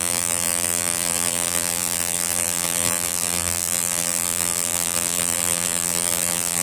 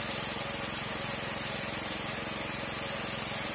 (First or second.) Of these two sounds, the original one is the second